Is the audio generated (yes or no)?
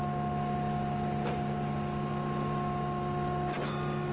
no